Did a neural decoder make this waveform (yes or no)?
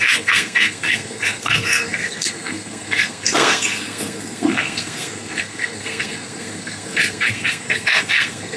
yes